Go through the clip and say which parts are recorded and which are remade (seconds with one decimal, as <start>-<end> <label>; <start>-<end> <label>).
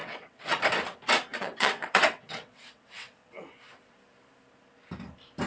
0.0-0.6 remade; 0.6-1.3 recorded; 1.3-3.4 remade; 3.4-5.5 recorded